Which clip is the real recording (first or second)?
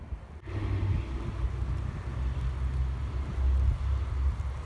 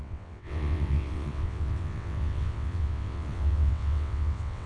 first